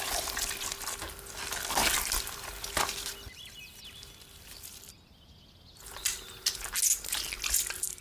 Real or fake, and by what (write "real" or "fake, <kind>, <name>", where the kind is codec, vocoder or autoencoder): real